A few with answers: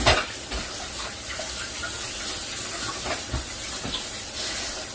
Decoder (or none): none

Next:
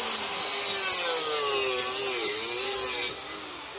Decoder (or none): none